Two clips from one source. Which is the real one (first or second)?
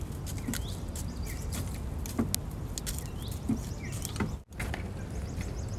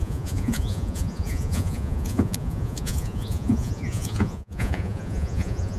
first